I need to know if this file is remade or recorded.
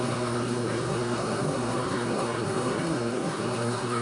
remade